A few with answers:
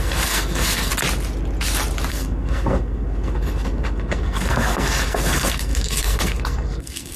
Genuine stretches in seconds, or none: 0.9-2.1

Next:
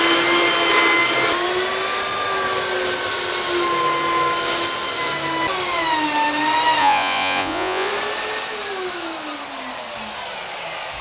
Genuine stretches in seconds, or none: 0.0-6.8; 7.9-11.0

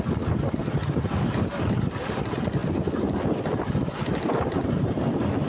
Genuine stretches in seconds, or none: 0.0-5.5

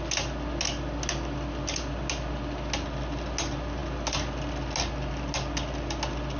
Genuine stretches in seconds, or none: 0.0-6.4

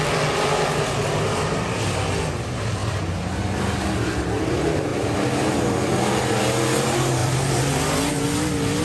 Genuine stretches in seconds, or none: 0.0-7.2; 8.1-8.8

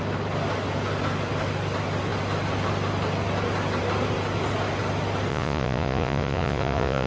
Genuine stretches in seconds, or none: 0.0-5.3